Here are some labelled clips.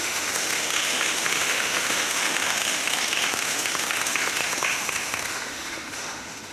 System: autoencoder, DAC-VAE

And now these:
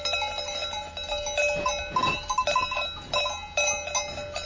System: none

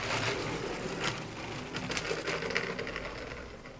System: none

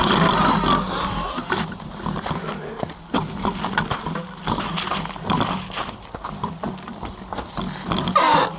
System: none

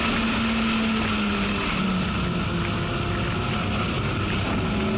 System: none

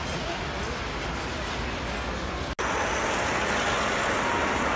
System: none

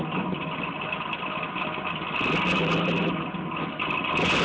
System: none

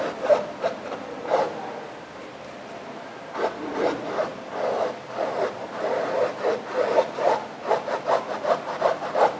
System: none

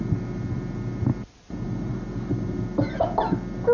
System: none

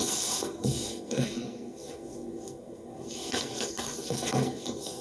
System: codec, SNAC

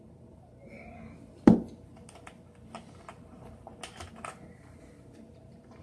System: none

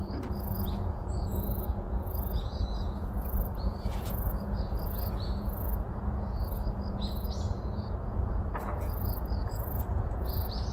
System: vocoder, Vocos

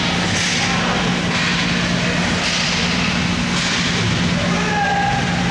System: none